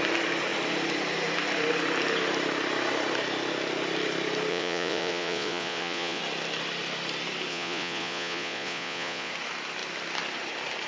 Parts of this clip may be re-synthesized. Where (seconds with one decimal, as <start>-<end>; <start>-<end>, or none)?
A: 4.5-6.2; 7.5-9.3